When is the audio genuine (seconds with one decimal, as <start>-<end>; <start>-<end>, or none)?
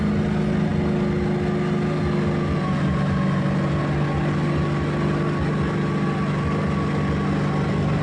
0.0-8.0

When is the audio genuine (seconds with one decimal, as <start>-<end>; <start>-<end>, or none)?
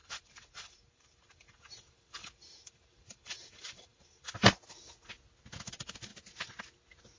4.3-7.2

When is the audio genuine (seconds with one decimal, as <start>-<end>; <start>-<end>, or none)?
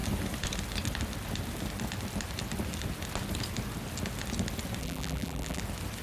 0.0-4.8; 5.6-6.0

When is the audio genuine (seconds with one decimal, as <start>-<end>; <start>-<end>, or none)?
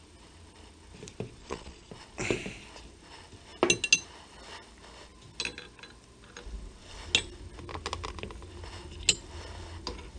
0.0-1.4; 1.9-10.2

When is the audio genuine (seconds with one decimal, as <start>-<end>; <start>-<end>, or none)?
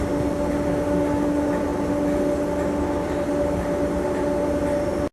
0.0-5.1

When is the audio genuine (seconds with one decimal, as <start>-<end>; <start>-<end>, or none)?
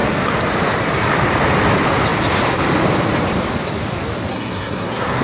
0.0-4.3